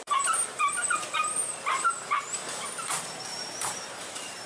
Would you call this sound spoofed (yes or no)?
yes